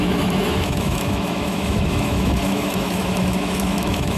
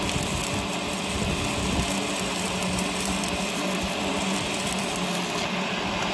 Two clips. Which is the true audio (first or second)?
second